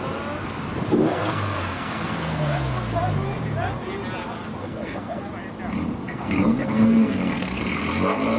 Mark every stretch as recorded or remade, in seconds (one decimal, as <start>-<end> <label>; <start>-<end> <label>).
0.0-1.0 recorded; 1.0-3.0 remade; 3.0-4.6 recorded; 4.6-5.3 remade; 5.3-6.0 recorded; 6.0-7.6 remade; 7.6-8.4 recorded